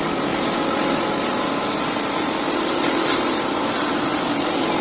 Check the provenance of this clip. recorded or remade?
recorded